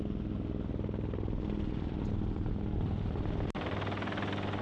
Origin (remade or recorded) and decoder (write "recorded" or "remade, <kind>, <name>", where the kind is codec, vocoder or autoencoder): recorded